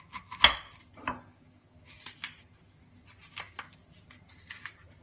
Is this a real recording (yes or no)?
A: yes